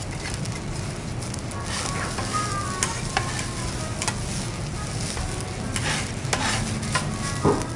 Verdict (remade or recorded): recorded